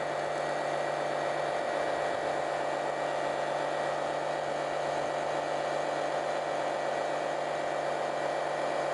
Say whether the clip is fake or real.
real